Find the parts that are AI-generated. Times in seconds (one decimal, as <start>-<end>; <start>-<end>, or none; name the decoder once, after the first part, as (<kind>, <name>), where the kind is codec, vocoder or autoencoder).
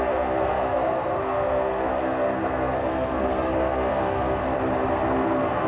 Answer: 0.0-4.4 (codec, SNAC); 4.9-5.7